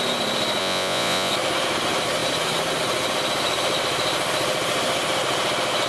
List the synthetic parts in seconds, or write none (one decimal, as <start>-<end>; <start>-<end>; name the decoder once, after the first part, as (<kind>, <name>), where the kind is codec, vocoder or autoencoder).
0.6-1.3 (vocoder, Vocos)